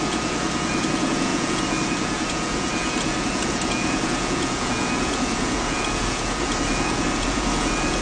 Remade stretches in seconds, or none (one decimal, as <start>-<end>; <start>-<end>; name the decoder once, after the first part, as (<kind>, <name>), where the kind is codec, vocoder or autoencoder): 0.0-8.0 (vocoder, Vocos)